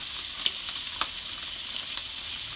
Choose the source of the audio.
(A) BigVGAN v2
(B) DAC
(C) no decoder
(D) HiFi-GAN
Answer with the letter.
C